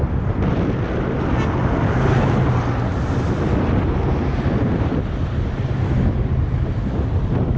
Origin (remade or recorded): recorded